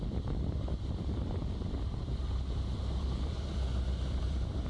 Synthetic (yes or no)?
yes